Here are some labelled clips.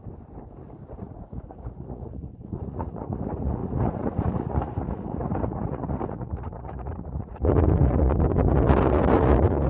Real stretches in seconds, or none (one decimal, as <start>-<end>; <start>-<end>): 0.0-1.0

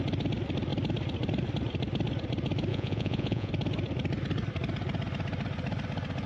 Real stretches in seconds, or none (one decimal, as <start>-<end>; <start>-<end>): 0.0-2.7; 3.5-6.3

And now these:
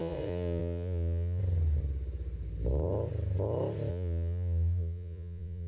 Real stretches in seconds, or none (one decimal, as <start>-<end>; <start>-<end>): 1.4-3.9

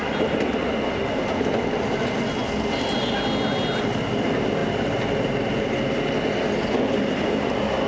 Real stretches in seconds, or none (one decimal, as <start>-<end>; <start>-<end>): 0.0-7.9

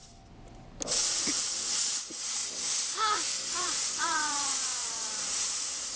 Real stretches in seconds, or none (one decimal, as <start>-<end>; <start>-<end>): 0.0-0.9; 2.4-3.5

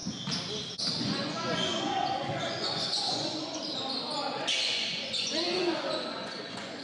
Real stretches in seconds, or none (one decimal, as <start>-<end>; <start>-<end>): 0.0-0.9; 3.6-4.3